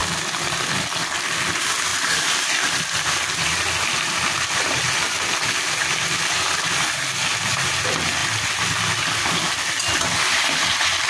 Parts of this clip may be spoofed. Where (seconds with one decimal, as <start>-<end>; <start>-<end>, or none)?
1.9-6.3; 8.2-10.0

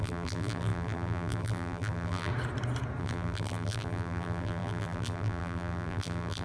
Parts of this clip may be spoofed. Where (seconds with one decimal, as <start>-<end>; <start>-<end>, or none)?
0.0-2.3; 3.0-6.4

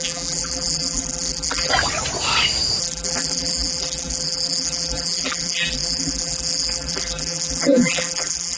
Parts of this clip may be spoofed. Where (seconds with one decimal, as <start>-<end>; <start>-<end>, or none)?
0.0-1.7; 2.8-8.6